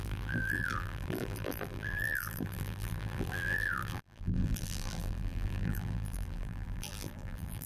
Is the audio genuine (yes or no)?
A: no